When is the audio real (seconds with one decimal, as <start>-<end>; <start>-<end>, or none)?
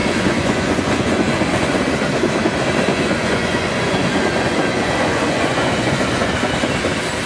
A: 1.8-2.9; 6.5-7.3